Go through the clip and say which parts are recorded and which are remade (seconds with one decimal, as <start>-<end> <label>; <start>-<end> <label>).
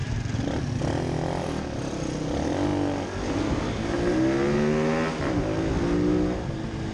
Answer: 0.0-6.9 recorded